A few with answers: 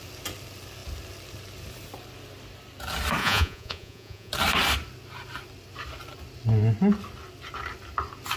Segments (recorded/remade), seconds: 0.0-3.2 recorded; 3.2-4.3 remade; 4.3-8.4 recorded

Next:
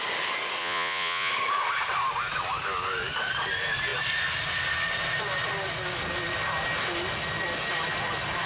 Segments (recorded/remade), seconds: 0.0-0.6 recorded; 0.6-1.3 remade; 1.3-8.5 recorded

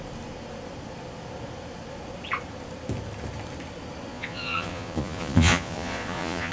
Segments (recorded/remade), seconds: 0.0-4.1 recorded; 4.1-6.5 remade

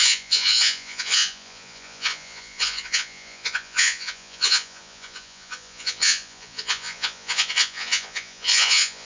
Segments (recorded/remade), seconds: 0.0-9.0 remade